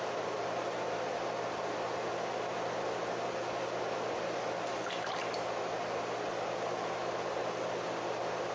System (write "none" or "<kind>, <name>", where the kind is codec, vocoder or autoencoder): none